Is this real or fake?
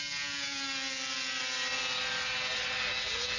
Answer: real